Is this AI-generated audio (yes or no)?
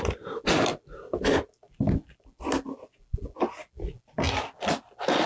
no